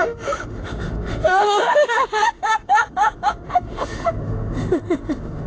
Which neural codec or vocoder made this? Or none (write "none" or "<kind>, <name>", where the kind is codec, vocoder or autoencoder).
autoencoder, DAC-VAE